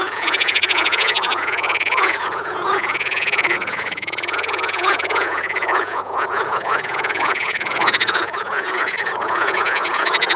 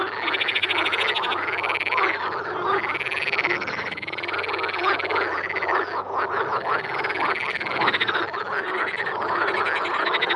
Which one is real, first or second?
second